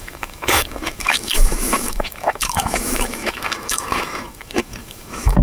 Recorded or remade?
remade